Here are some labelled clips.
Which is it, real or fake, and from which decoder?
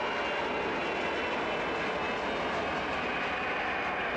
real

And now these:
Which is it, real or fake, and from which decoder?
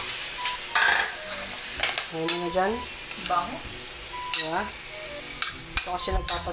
real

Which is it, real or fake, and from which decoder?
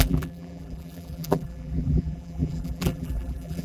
fake, vocoder, BigVGAN v2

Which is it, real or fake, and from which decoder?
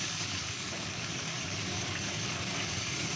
fake, codec, DAC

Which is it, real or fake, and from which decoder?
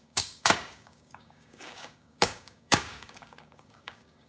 fake, codec, DAC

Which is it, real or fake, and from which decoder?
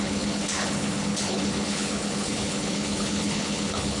fake, codec, HILCodec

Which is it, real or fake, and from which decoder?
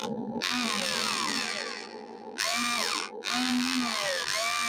fake, vocoder, BigVGAN v2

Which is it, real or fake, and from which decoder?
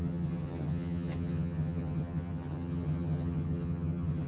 fake, vocoder, HiFi-GAN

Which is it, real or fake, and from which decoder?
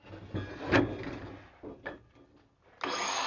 real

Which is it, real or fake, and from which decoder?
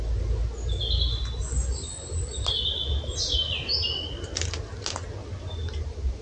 real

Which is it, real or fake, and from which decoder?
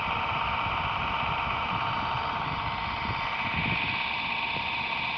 real